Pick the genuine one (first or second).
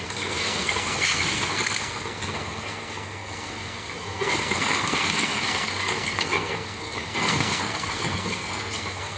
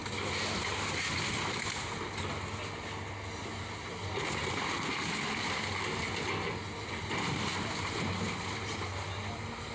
second